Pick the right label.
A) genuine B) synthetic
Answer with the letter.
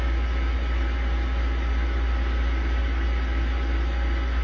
A